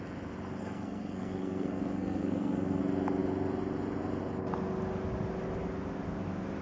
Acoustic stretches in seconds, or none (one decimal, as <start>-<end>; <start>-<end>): 0.0-0.6; 2.8-6.6